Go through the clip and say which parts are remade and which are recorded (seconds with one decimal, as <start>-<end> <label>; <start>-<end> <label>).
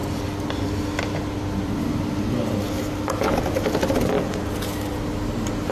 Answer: 0.0-5.7 recorded